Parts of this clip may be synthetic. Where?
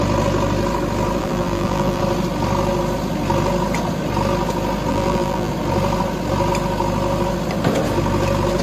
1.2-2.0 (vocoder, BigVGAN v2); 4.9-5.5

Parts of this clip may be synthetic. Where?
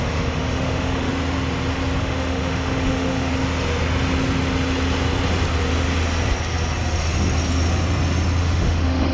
0.0-1.1 (autoencoder, DAC-VAE); 2.0-3.3; 8.4-9.1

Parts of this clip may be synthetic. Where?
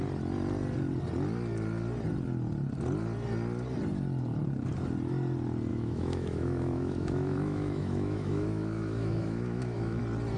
5.7-10.0 (autoencoder, DAC-VAE)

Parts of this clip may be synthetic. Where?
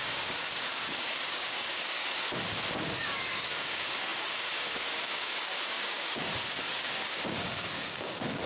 0.0-2.0 (codec, DAC); 2.9-8.5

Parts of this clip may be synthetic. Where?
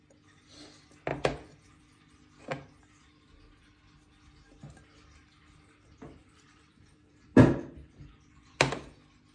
1.1-2.1 (vocoder, BigVGAN v2); 6.2-8.8